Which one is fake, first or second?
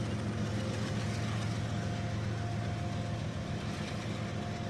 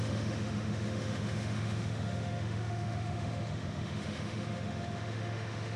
second